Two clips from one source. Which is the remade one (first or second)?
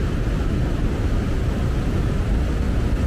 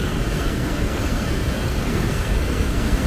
second